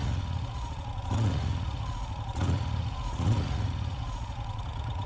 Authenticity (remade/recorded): remade